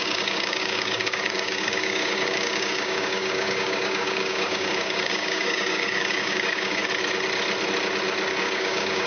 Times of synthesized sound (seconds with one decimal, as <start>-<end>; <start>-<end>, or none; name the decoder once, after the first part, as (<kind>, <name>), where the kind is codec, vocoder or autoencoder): 0.0-6.8 (codec, DAC); 8.4-9.1